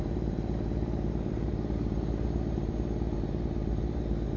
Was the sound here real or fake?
fake